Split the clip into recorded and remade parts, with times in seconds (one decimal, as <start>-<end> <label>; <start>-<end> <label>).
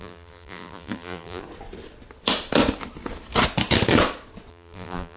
0.0-1.4 remade; 1.4-4.5 recorded; 4.5-5.2 remade